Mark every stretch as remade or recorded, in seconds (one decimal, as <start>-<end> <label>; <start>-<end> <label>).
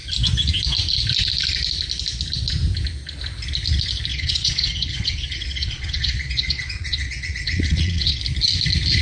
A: 0.0-4.1 recorded; 4.1-8.2 remade; 8.2-9.0 recorded